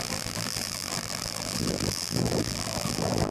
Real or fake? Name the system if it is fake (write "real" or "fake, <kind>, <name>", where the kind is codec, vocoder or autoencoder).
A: fake, vocoder, BigVGAN v2